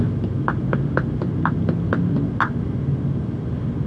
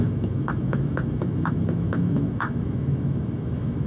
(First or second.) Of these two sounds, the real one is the first